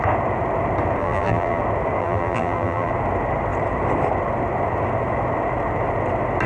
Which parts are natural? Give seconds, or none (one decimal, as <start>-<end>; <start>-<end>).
0.0-1.0; 1.6-2.0; 2.9-6.5